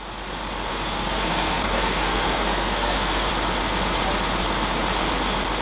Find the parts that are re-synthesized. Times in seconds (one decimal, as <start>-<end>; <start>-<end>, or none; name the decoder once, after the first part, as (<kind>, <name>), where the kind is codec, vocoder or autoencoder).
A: 0.7-3.3 (codec, SNAC)